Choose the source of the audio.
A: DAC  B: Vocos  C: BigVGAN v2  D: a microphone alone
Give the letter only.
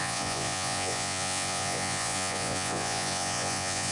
B